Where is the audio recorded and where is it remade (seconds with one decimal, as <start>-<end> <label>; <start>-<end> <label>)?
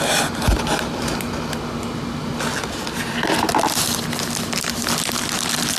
0.0-5.8 recorded